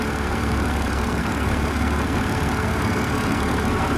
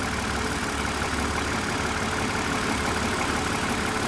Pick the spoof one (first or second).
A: first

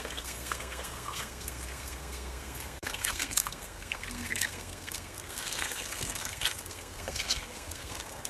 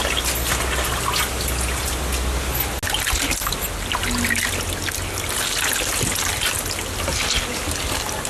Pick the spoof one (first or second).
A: first